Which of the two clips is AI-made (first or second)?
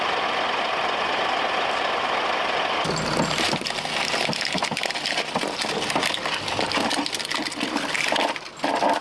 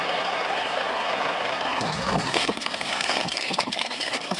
second